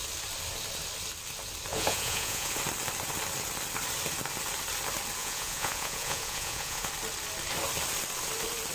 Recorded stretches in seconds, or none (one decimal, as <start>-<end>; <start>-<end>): 0.0-1.7; 2.6-5.2; 6.9-8.7